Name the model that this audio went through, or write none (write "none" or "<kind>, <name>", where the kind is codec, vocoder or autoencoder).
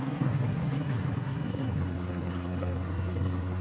codec, SNAC